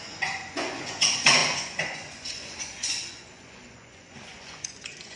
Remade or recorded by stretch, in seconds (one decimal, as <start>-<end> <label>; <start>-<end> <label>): 0.0-5.2 remade